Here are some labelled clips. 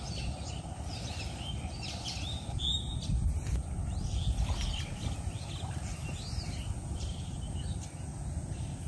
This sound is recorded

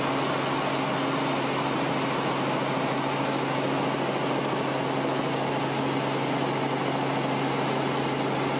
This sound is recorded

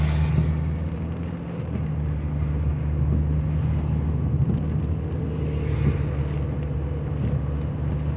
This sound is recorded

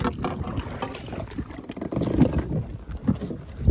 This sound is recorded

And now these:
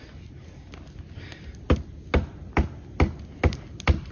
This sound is recorded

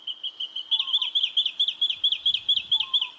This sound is recorded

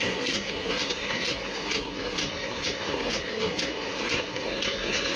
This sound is remade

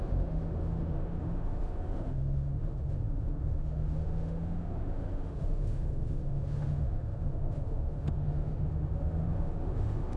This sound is remade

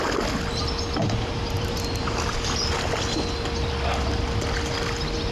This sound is recorded